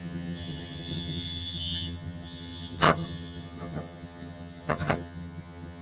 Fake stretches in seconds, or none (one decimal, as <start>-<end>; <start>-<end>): 0.0-5.8

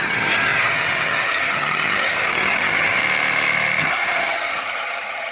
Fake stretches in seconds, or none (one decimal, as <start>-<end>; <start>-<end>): 0.0-3.0; 3.8-5.3